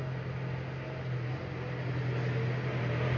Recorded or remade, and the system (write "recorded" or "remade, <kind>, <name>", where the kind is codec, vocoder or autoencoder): recorded